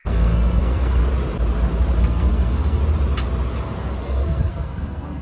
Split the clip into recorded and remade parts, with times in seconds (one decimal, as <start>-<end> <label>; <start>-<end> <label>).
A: 0.0-1.0 remade; 1.0-2.0 recorded; 2.0-2.8 remade; 2.8-3.8 recorded; 3.8-5.2 remade

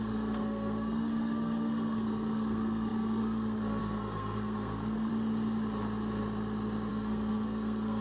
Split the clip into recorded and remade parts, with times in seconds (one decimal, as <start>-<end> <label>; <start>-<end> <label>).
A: 0.0-5.1 remade; 5.1-6.9 recorded; 6.9-8.0 remade